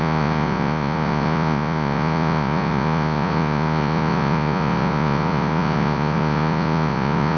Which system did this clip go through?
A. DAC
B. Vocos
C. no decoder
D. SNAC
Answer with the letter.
B